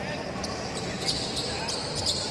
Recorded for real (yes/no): no